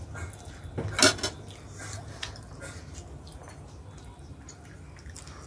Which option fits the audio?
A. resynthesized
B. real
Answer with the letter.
B